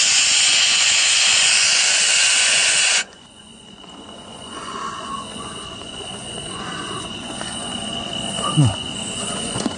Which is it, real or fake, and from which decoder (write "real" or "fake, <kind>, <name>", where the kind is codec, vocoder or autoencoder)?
fake, vocoder, Vocos